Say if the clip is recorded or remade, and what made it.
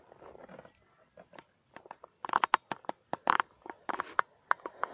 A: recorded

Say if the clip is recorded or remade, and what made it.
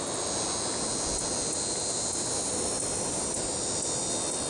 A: recorded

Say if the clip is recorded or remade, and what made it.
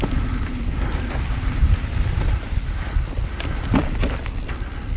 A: recorded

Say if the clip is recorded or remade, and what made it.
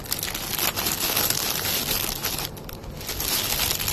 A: recorded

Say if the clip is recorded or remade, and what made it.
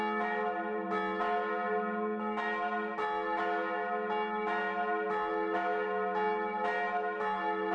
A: recorded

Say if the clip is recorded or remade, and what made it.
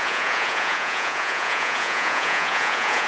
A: remade, vocoder, Vocos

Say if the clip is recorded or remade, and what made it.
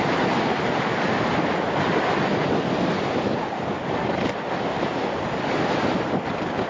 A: recorded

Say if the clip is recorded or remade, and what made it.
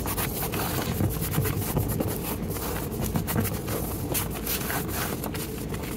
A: recorded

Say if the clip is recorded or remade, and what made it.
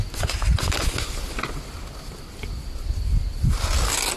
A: recorded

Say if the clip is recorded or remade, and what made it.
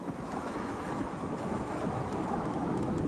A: remade, autoencoder, DAC-VAE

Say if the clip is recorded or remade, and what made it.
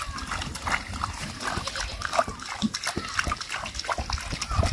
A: recorded